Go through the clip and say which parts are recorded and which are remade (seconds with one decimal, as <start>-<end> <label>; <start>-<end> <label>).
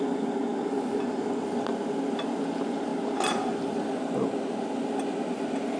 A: 0.0-5.8 recorded